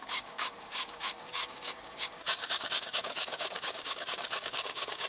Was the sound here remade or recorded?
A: remade